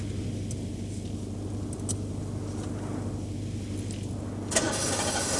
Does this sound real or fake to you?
real